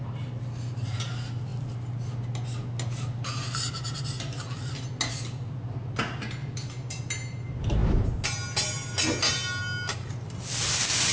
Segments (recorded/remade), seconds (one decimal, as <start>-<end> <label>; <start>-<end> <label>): 0.0-11.1 recorded